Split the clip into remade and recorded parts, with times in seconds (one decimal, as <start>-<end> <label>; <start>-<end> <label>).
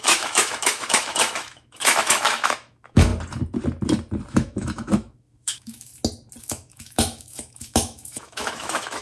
0.0-3.1 remade; 3.1-4.3 recorded; 4.3-5.9 remade; 5.9-6.4 recorded; 6.4-9.0 remade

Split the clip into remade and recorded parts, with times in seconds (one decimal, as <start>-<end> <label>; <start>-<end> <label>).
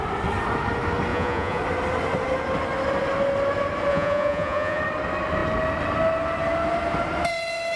0.0-1.1 recorded; 1.1-1.6 remade; 1.6-3.9 recorded; 3.9-4.8 remade; 4.8-7.8 recorded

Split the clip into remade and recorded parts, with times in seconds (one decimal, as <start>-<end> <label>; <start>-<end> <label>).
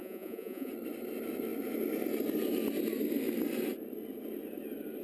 0.0-0.7 remade; 0.7-5.0 recorded